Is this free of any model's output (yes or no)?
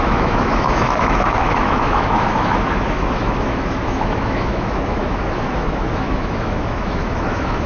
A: no